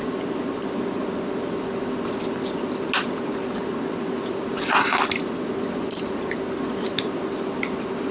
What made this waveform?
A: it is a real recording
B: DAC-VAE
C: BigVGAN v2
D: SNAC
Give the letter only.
A